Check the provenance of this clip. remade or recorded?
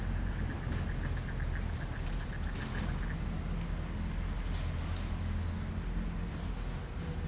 recorded